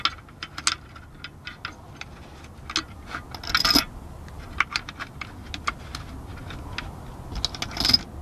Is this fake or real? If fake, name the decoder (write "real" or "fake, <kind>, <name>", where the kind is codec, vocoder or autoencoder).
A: real